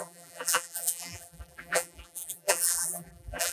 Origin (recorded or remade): remade